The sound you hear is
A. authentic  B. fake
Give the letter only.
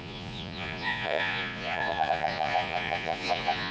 B